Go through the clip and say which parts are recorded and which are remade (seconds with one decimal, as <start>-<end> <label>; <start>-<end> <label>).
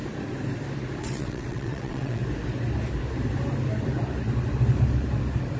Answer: 0.0-1.0 recorded; 1.0-2.2 remade; 2.2-5.6 recorded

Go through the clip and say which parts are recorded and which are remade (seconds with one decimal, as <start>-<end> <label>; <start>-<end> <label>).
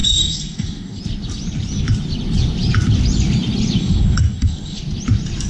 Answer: 0.0-1.0 remade; 1.0-3.8 recorded; 3.8-4.8 remade; 4.8-5.5 recorded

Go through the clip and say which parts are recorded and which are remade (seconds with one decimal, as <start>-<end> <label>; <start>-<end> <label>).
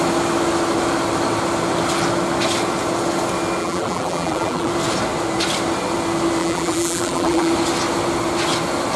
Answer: 0.0-3.6 recorded; 3.6-4.7 remade; 4.7-6.4 recorded; 6.4-7.5 remade; 7.5-9.0 recorded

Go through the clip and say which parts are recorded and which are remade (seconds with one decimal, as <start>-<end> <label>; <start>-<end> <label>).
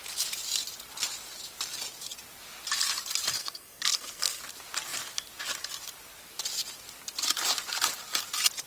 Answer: 0.0-3.4 recorded; 3.4-4.4 remade; 4.4-8.7 recorded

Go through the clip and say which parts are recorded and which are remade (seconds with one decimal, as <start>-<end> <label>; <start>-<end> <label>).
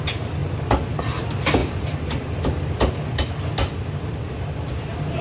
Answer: 0.0-5.2 recorded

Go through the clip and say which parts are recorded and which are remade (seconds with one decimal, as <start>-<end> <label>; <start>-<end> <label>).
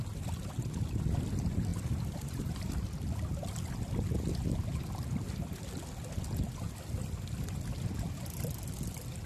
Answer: 0.0-1.7 recorded; 1.7-2.8 remade; 2.8-9.3 recorded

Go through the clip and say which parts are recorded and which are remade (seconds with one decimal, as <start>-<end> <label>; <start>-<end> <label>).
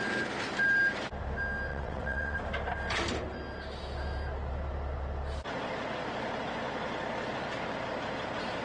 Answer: 0.0-1.7 recorded; 1.7-2.4 remade; 2.4-8.6 recorded